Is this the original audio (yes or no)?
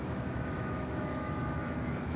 no